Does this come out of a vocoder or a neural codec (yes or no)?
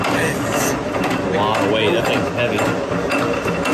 no